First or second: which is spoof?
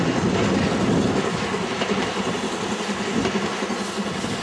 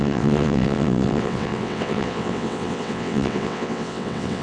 second